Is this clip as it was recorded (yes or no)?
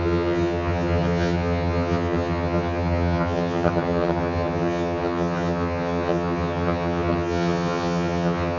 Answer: no